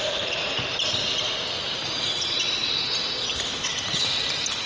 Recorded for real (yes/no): yes